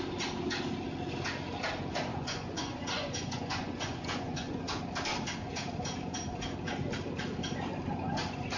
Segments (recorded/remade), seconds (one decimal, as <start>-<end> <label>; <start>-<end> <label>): 0.0-2.1 recorded; 2.1-4.8 remade; 4.8-8.6 recorded